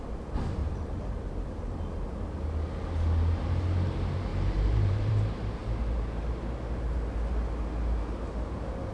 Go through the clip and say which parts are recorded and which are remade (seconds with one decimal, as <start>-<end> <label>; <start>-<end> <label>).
0.0-0.6 recorded; 0.6-1.8 remade; 1.8-4.3 recorded; 4.3-5.1 remade; 5.1-8.9 recorded